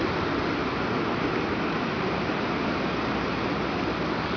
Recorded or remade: recorded